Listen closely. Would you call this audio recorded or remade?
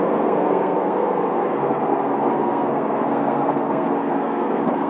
remade